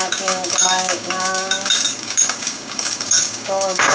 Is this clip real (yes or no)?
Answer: no